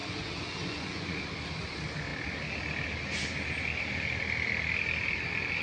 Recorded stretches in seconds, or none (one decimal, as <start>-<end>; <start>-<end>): 1.2-5.6